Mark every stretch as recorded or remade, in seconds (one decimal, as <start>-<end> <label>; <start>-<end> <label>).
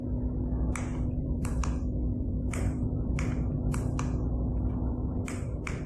0.0-0.9 recorded; 0.9-3.1 remade; 3.1-4.5 recorded; 4.5-5.9 remade